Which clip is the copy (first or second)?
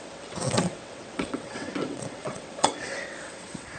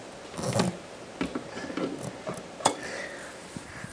first